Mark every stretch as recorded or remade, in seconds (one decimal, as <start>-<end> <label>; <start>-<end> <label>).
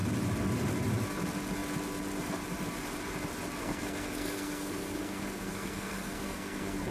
0.0-3.6 recorded; 3.6-6.9 remade